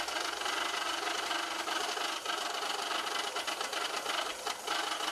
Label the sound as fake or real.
real